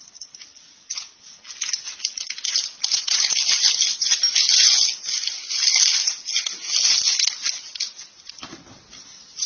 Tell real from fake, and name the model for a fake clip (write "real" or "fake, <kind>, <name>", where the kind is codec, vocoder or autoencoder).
real